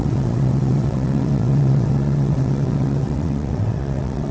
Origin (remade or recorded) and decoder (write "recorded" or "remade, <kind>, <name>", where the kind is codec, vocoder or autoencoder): remade, vocoder, WaveNeXt